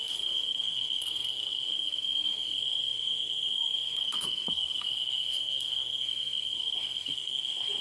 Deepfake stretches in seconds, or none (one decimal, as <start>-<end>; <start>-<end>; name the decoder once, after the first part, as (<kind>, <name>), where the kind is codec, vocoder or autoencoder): 0.0-7.8 (codec, SNAC)